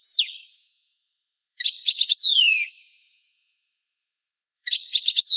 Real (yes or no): no